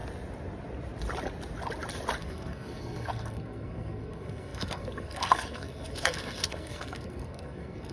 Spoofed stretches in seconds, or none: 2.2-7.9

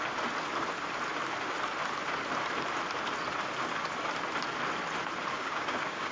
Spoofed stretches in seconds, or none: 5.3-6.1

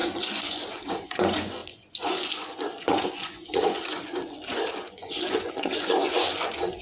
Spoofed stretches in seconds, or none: 0.0-6.8